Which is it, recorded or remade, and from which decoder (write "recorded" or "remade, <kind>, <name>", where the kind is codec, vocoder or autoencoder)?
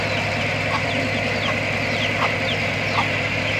recorded